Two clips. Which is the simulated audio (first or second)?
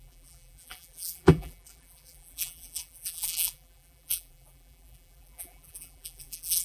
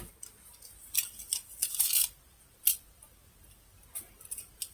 first